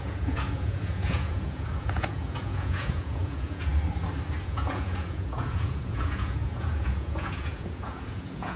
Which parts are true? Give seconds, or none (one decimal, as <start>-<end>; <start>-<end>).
3.7-4.4